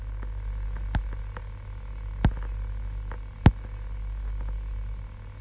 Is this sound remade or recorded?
recorded